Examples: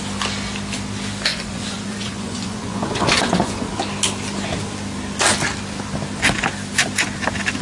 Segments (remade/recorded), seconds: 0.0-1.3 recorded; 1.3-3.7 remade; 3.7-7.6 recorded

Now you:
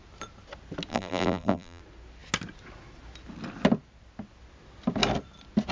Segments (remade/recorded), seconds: 0.0-0.9 recorded; 0.9-1.8 remade; 1.8-5.7 recorded